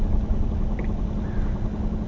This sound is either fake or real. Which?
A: real